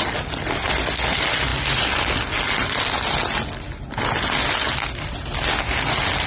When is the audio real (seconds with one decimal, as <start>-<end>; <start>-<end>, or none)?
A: 0.0-6.3